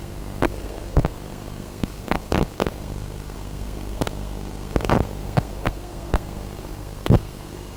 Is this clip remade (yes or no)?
yes